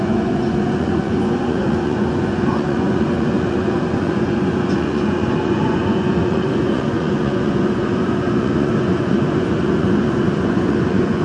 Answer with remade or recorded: remade